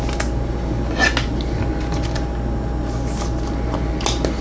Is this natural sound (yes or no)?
yes